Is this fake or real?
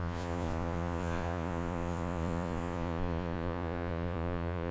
fake